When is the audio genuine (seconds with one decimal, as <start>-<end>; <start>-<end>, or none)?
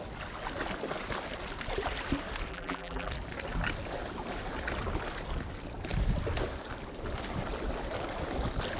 0.0-2.5; 3.1-8.8